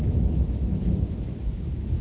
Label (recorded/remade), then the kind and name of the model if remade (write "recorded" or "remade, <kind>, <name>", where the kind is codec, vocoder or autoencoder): remade, autoencoder, DAC-VAE